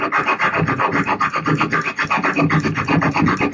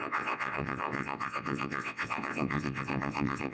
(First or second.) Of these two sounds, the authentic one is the first